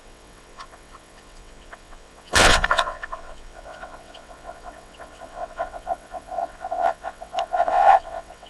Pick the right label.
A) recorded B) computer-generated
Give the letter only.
B